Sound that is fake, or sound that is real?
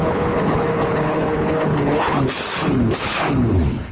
fake